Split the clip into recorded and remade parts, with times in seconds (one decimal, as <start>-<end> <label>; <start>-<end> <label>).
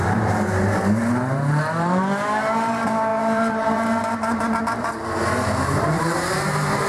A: 0.0-6.9 remade